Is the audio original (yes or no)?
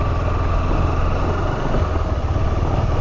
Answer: yes